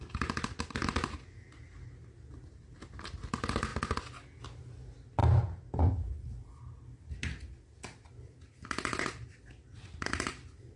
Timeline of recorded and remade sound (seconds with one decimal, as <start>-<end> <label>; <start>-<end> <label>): 0.0-10.8 recorded